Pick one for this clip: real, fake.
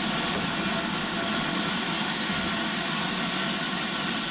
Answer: real